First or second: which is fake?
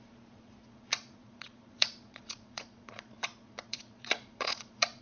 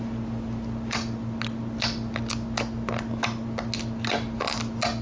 first